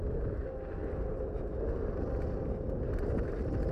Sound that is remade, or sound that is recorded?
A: recorded